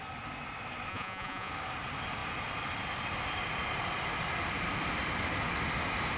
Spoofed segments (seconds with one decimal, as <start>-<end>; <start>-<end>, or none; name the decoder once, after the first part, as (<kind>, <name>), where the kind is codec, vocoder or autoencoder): 0.9-1.5 (vocoder, Vocos)